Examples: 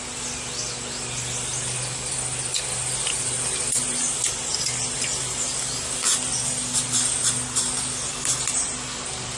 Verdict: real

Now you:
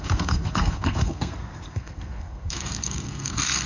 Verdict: fake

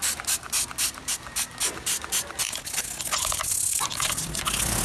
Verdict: real